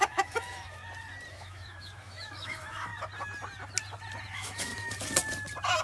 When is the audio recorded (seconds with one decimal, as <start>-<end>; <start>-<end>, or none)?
0.8-1.3; 2.9-4.3; 4.7-5.8